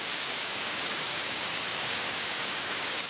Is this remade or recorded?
remade